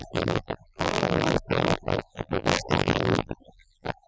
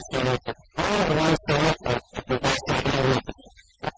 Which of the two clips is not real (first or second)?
first